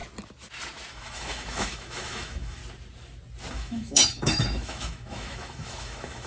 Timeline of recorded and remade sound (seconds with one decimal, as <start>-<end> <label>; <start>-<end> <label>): 0.0-0.9 recorded; 0.9-2.6 remade; 2.6-3.5 recorded; 3.5-6.3 remade